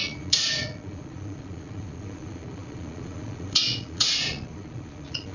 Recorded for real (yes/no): no